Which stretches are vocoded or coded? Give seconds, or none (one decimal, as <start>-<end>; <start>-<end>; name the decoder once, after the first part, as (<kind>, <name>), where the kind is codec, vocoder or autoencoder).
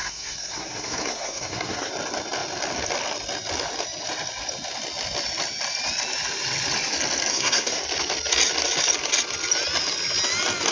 0.0-1.9 (codec, SNAC); 7.3-7.8